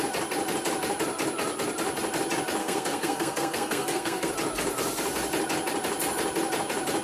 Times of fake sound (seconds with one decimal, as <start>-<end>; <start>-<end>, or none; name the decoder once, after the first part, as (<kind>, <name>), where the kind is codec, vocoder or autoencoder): 2.6-4.3 (codec, SNAC)